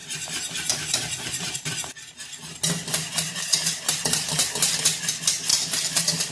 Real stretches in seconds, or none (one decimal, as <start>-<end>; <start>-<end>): 1.9-3.5; 4.8-5.5